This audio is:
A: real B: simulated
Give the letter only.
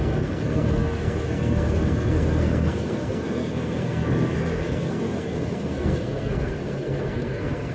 B